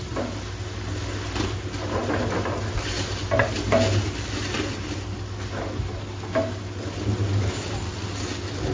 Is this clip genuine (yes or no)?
yes